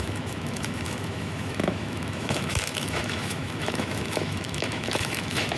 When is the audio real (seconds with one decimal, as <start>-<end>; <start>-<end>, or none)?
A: none